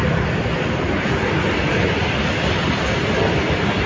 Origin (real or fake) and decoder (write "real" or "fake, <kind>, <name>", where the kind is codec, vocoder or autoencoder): real